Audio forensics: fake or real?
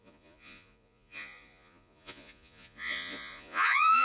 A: fake